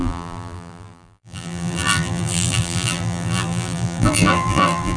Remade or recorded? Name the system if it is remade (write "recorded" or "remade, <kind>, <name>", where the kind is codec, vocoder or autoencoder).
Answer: remade, vocoder, BigVGAN v2